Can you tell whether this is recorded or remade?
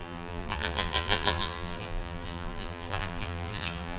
remade